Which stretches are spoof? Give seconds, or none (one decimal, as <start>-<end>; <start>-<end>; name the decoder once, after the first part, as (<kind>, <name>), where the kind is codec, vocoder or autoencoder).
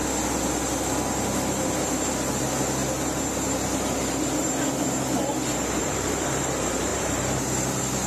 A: 2.3-2.8 (vocoder, BigVGAN v2); 5.8-8.1